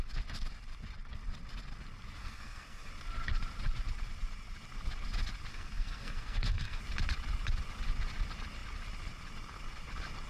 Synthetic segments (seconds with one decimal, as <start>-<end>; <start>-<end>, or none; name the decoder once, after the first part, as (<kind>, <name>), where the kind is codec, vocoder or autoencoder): 2.2-2.9 (codec, SNAC); 5.5-6.8